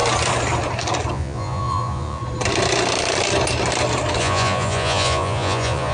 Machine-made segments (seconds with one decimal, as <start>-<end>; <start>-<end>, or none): 1.1-2.2; 4.2-5.9

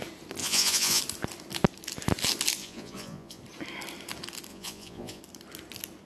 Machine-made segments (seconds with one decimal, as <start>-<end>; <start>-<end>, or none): 0.4-1.0; 2.6-3.4; 4.5-5.2